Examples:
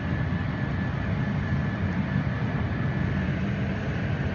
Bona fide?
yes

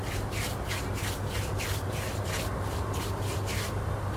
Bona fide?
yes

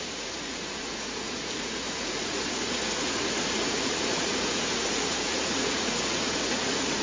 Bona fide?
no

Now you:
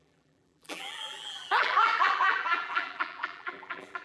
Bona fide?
no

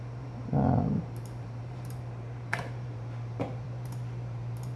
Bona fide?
no